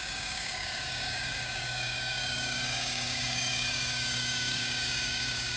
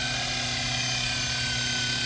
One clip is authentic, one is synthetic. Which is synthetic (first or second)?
first